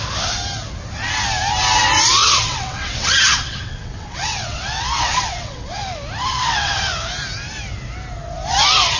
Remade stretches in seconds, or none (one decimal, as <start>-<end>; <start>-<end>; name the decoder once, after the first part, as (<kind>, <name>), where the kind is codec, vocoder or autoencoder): 2.2-5.8 (vocoder, WaveNeXt); 6.3-6.8